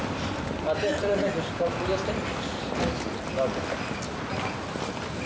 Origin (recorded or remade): recorded